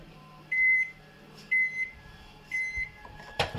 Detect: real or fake fake